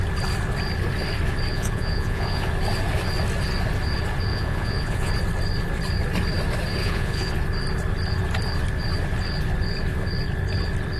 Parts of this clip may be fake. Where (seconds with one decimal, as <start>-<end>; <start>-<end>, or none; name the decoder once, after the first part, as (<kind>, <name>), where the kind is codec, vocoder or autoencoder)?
1.5-2.5 (vocoder, Vocos); 4.3-5.1; 6.8-7.3